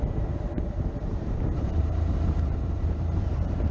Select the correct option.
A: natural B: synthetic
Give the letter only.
B